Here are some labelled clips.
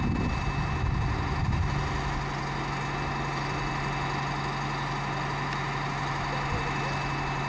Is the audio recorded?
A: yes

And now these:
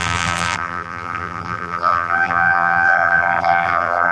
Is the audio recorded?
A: no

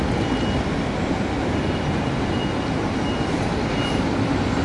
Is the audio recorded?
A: yes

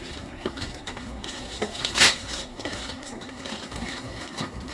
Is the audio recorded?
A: no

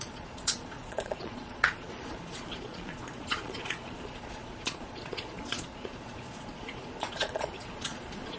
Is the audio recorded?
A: no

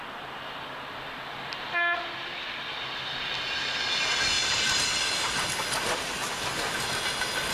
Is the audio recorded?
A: yes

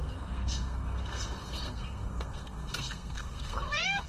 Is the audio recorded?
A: no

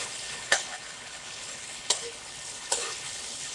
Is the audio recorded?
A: no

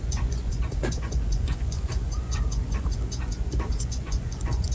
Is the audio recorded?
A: no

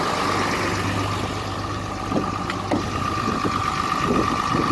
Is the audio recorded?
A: yes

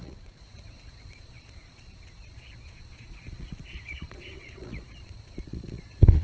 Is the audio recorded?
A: no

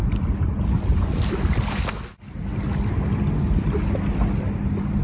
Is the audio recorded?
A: yes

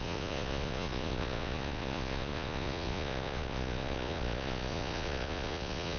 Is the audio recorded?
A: no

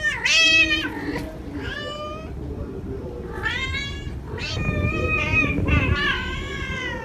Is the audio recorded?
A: yes